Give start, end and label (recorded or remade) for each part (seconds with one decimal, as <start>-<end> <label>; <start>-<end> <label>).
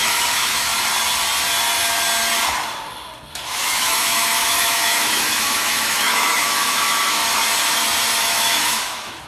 0.0-0.7 remade; 0.7-3.3 recorded; 3.3-7.2 remade; 7.2-8.2 recorded; 8.2-9.3 remade